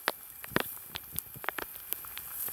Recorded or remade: recorded